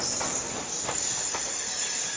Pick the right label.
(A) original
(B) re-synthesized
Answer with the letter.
A